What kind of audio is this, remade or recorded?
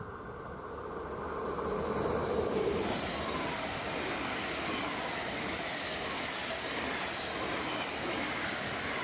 recorded